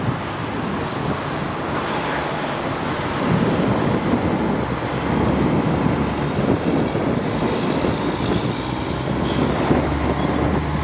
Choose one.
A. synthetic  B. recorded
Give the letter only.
B